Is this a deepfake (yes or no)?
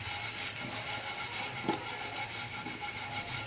no